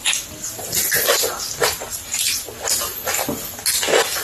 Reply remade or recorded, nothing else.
recorded